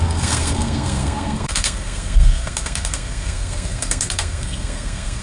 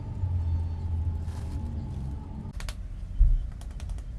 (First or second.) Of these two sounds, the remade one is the first